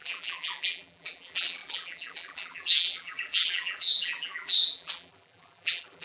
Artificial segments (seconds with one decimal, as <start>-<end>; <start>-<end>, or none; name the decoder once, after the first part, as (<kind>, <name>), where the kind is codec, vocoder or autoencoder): 0.0-6.0 (vocoder, BigVGAN v2)